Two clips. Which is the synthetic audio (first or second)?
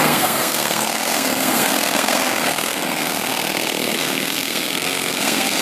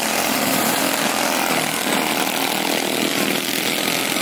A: first